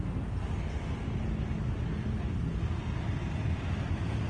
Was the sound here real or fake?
real